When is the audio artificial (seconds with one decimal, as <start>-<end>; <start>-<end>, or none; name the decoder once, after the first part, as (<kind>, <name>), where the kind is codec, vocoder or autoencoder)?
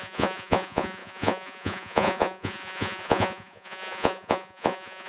0.0-5.1 (vocoder, Vocos)